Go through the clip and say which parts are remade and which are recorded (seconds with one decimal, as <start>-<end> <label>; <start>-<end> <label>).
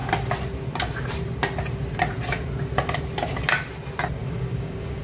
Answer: 0.0-4.2 recorded; 4.2-5.0 remade